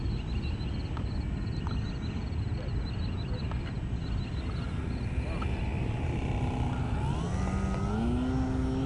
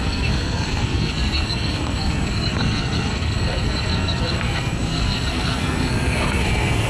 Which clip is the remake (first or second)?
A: second